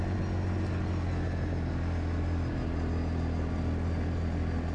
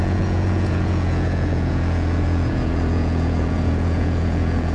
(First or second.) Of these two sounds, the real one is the first